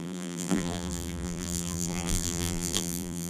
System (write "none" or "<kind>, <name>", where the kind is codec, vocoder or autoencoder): vocoder, BigVGAN v2